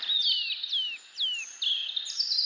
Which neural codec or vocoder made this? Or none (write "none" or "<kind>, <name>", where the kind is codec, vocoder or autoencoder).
none